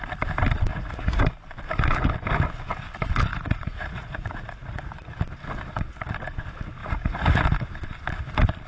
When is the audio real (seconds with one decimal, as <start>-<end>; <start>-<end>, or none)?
0.0-0.7; 1.2-3.3; 4.8-6.8; 7.4-8.7

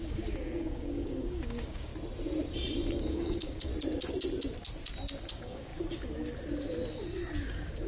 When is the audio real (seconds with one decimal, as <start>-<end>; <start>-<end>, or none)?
1.9-3.0; 3.7-5.3; 5.7-7.4